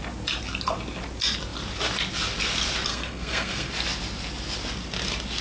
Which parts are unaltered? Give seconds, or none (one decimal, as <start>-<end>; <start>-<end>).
0.0-2.9; 3.7-5.4